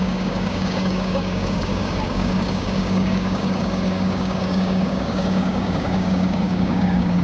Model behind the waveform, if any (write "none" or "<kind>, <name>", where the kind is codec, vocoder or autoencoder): codec, DAC